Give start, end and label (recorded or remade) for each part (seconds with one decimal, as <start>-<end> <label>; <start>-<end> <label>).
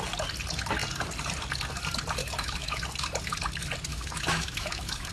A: 0.0-2.2 recorded; 2.2-2.8 remade; 2.8-3.9 recorded; 3.9-5.1 remade